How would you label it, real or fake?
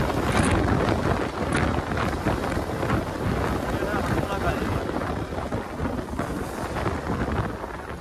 real